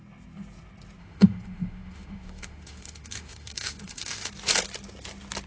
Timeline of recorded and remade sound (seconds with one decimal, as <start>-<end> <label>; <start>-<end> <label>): 0.0-1.0 recorded; 1.0-4.3 remade; 4.3-5.5 recorded